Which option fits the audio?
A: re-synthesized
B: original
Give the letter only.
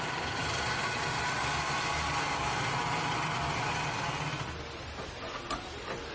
B